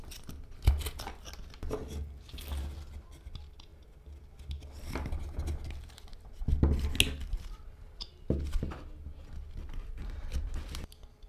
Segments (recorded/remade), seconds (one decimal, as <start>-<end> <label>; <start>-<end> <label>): 0.0-11.3 recorded